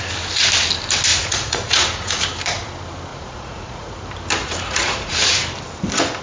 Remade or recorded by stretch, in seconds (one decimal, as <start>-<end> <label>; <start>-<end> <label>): 0.0-1.1 recorded; 1.1-2.2 remade; 2.2-3.1 recorded; 3.1-3.9 remade; 3.9-4.4 recorded; 4.4-5.4 remade; 5.4-6.2 recorded